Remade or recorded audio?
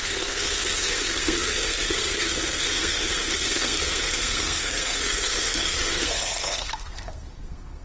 remade